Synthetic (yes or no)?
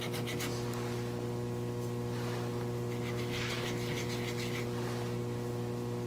no